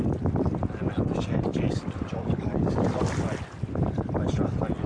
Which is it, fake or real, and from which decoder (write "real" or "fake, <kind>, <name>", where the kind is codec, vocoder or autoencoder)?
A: real